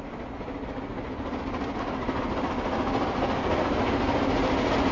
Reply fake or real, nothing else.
real